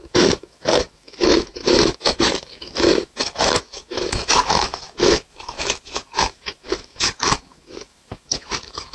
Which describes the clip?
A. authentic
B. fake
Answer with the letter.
B